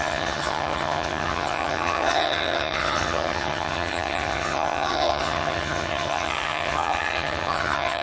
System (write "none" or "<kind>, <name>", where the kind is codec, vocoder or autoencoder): vocoder, HiFi-GAN